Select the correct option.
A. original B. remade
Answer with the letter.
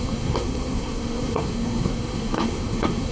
B